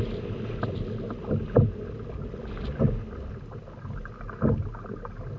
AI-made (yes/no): no